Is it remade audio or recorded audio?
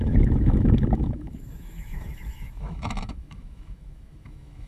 remade